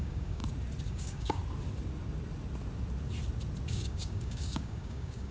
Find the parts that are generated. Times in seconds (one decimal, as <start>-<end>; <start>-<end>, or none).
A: 0.0-0.4; 0.9-1.4; 3.7-5.3